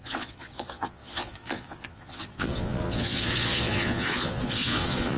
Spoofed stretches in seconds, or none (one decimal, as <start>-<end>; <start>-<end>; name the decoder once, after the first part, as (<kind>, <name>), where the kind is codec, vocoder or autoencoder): 0.0-5.2 (vocoder, Vocos)

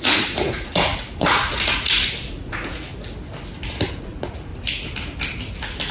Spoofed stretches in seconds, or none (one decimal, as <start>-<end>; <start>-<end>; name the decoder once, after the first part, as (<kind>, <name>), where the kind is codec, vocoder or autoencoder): 0.0-2.9 (vocoder, Vocos); 3.9-4.5

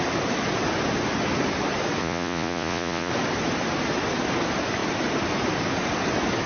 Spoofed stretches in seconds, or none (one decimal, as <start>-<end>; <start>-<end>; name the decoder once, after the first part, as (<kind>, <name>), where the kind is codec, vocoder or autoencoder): 2.0-3.1 (vocoder, Vocos)